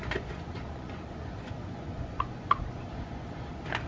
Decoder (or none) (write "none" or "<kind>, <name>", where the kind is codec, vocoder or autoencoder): vocoder, Vocos